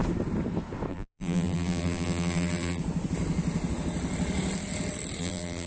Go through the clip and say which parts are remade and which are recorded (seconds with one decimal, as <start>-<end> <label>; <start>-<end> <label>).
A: 0.0-0.9 recorded; 0.9-2.8 remade; 2.8-5.2 recorded; 5.2-5.7 remade